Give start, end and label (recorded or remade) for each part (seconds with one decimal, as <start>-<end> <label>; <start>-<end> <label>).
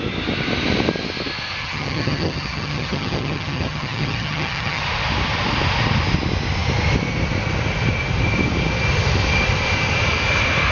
0.0-1.6 recorded; 1.6-4.8 remade; 4.8-10.7 recorded